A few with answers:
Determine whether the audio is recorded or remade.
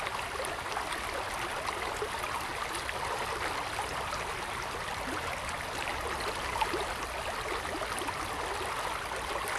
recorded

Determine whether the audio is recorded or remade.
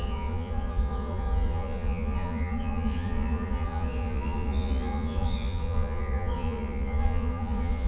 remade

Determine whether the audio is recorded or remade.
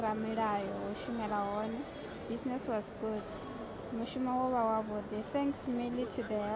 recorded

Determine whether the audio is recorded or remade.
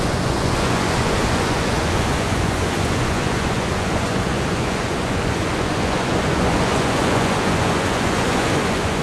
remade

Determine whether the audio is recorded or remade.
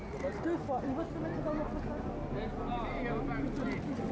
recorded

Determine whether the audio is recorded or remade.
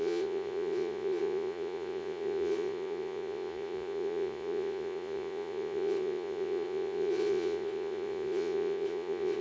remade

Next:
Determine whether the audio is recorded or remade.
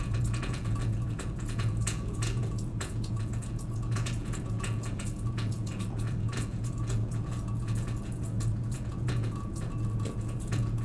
remade